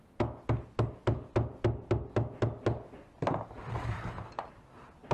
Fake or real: real